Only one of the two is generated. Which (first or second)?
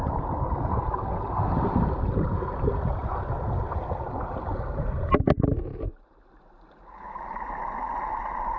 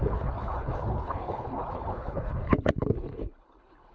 second